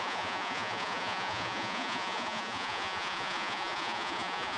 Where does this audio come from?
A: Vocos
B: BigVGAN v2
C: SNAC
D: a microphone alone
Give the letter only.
A